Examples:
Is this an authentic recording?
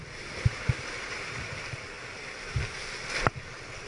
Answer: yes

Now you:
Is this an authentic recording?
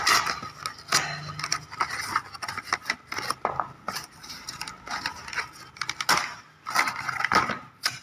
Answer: yes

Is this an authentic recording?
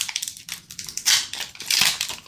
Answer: no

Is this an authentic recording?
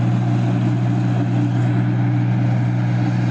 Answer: yes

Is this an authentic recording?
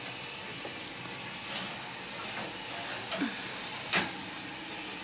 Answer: yes